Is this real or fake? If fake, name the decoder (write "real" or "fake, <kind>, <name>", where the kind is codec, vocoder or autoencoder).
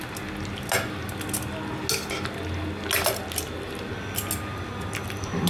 real